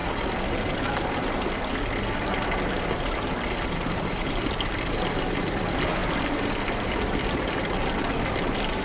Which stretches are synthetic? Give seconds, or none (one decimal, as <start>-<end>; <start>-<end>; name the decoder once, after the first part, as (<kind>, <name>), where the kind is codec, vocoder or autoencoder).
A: none